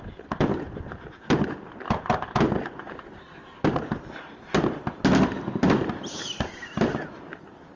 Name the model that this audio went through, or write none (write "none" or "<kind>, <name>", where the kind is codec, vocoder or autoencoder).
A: none